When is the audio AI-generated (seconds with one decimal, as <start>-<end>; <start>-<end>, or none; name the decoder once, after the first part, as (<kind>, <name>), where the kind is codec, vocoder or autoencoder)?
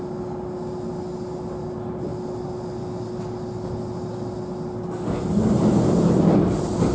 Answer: none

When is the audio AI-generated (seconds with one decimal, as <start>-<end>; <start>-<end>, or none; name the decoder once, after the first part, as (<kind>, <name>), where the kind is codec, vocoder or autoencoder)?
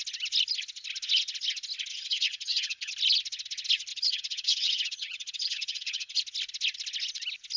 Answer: 1.9-2.9 (vocoder, HiFi-GAN); 3.9-6.2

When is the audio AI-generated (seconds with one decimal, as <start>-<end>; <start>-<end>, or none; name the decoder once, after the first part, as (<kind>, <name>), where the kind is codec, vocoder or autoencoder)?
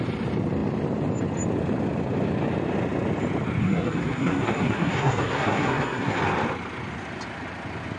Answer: 3.6-6.2 (codec, SNAC)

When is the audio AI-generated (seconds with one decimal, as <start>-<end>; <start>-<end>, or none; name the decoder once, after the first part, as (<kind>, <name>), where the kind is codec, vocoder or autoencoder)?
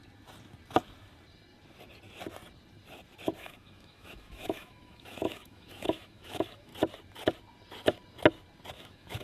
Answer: 3.4-6.7 (autoencoder, DAC-VAE); 8.7-9.2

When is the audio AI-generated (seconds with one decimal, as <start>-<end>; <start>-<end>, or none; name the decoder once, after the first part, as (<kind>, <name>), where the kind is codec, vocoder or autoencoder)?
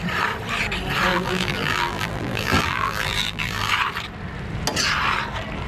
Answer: 1.1-3.7 (vocoder, BigVGAN v2)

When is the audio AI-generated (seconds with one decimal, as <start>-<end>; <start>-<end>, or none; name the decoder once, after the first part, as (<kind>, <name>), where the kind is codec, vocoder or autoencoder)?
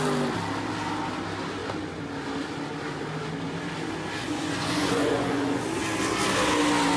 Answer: 4.2-5.6 (vocoder, Vocos)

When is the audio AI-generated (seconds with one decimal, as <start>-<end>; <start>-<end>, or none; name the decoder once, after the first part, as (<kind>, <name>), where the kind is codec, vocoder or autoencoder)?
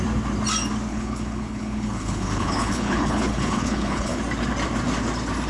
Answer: 0.9-4.2 (codec, HILCodec)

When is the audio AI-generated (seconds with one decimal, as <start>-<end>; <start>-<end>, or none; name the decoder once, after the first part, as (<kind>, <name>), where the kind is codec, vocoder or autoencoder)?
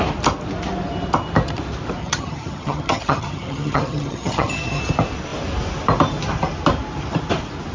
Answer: 2.0-4.8 (vocoder, HiFi-GAN)